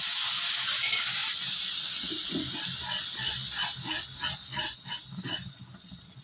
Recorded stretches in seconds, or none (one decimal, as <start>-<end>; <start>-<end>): 0.0-6.2